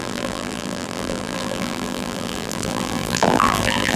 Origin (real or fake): fake